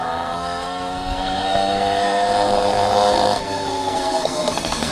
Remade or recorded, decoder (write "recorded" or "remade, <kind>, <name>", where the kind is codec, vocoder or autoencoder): remade, codec, SNAC